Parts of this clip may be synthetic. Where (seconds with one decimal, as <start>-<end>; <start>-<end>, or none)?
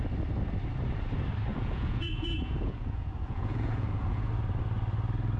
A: 1.5-4.3